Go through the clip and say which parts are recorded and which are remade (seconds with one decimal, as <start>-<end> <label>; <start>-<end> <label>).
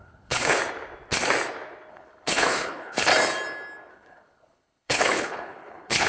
0.0-0.6 remade; 0.6-1.9 recorded; 1.9-3.1 remade; 3.1-3.9 recorded; 3.9-6.1 remade